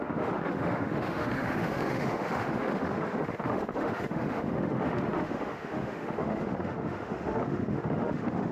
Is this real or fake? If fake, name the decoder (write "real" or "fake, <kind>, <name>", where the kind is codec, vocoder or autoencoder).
fake, autoencoder, DAC-VAE